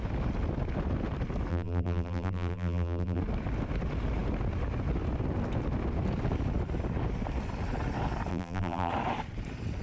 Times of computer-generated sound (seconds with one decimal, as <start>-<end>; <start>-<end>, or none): 1.5-3.2; 8.3-8.9